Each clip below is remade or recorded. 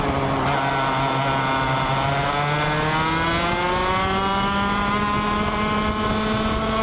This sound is recorded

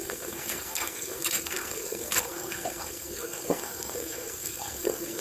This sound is remade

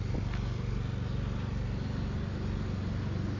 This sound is recorded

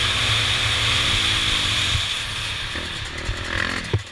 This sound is recorded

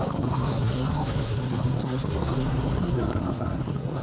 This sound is remade